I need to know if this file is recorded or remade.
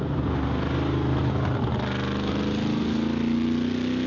recorded